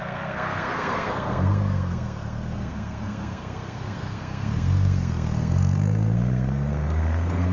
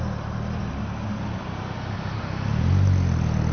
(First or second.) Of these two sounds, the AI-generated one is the first